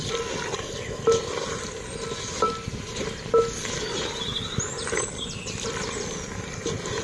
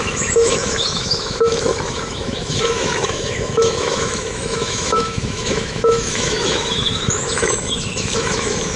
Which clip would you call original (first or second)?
first